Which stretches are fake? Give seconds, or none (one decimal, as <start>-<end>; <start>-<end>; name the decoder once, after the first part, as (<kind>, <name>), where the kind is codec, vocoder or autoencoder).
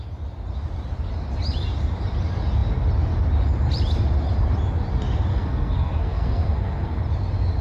5.3-7.0 (codec, SNAC)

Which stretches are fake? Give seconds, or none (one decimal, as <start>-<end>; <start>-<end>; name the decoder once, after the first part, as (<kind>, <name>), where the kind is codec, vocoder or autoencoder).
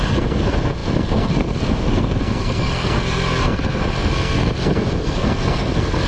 0.0-6.1 (codec, SNAC)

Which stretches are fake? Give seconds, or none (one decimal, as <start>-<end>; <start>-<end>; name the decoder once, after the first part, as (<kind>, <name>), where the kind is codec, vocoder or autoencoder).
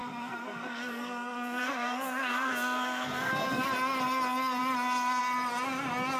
0.0-3.7 (codec, SNAC)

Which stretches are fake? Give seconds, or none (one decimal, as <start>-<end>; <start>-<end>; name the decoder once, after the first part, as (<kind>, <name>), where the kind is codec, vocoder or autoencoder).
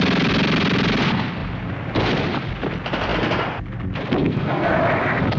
4.2-4.8 (codec, SNAC)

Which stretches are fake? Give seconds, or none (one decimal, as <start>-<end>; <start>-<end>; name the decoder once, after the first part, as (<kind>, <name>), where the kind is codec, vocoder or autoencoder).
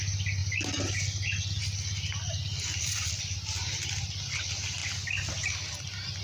none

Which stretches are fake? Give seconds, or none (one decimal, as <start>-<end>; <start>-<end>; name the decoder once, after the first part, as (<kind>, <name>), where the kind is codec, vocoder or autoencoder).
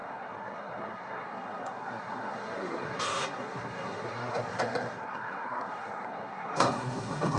0.0-7.4 (codec, SNAC)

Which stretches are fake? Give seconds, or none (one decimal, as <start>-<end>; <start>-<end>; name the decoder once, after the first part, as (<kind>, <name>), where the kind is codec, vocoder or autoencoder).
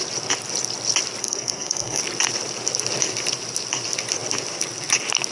1.2-2.0 (codec, SNAC)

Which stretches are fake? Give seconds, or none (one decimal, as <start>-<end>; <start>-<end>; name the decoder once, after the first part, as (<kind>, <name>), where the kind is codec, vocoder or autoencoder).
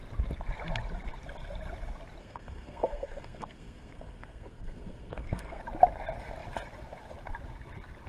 2.2-5.6 (codec, SNAC)